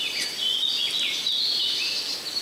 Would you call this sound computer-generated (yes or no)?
no